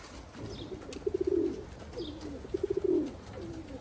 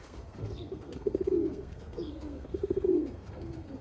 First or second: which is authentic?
first